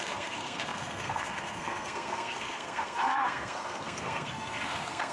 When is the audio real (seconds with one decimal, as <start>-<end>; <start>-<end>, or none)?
none